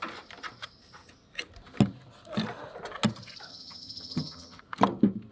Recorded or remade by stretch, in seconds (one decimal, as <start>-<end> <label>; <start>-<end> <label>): 0.0-3.5 recorded; 3.5-4.6 remade; 4.6-5.3 recorded